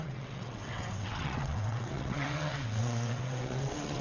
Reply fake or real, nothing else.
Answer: fake